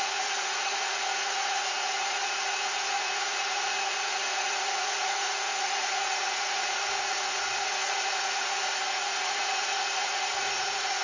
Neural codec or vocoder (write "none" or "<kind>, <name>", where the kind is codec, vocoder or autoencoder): vocoder, Vocos